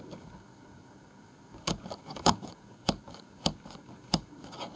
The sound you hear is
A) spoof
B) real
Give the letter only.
A